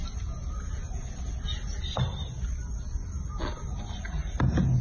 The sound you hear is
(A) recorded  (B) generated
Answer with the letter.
A